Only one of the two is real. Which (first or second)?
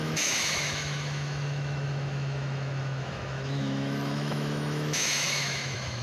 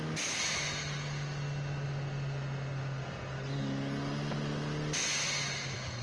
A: second